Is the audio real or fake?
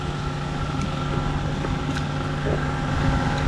real